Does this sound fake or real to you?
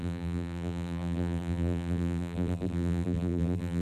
fake